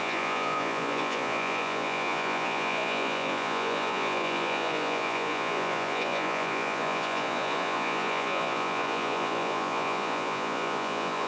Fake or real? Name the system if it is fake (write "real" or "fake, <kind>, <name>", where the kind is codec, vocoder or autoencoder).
fake, vocoder, Vocos